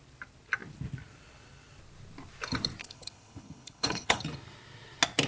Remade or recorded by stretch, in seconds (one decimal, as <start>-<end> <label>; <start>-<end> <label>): 0.0-2.8 recorded; 2.8-4.2 remade; 4.2-5.3 recorded